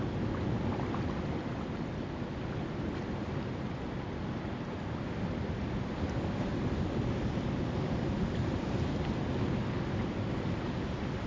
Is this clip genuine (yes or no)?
yes